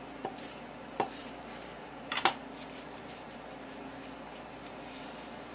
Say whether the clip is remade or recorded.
remade